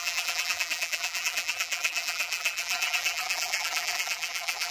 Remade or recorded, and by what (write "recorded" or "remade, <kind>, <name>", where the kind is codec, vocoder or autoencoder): remade, vocoder, BigVGAN v2